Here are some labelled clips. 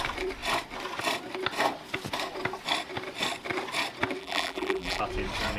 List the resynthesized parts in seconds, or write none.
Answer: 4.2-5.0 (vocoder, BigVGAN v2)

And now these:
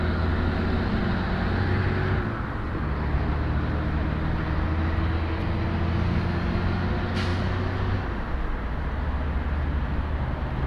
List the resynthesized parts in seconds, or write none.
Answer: none